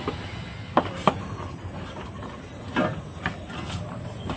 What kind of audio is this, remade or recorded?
recorded